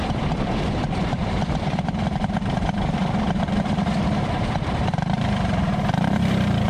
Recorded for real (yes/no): no